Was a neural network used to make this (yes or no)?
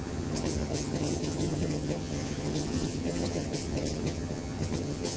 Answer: yes